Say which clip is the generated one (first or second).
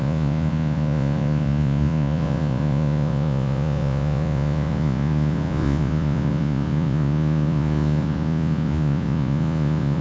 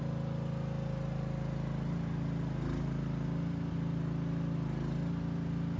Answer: first